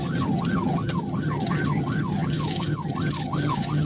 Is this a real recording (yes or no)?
no